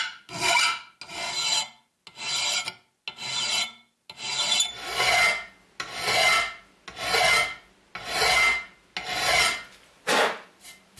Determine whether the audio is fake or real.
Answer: real